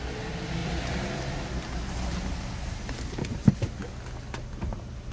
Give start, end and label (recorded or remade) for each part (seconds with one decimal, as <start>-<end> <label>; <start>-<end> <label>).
0.0-0.6 recorded; 0.6-1.4 remade; 1.4-5.1 recorded